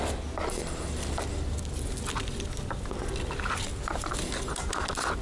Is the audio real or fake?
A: real